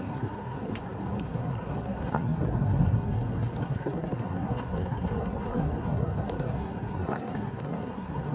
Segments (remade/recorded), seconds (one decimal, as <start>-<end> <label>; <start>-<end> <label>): 0.0-0.7 remade; 0.7-1.2 recorded; 1.2-8.3 remade